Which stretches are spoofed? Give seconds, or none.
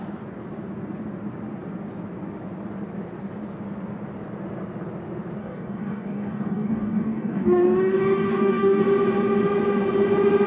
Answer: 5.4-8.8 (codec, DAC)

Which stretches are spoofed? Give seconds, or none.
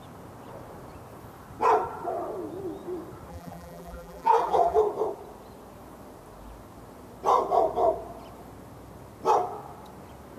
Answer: 3.3-4.8 (vocoder, BigVGAN v2)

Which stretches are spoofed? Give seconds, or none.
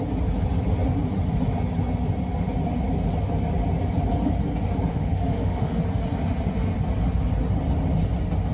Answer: 4.9-5.8 (autoencoder, DAC-VAE)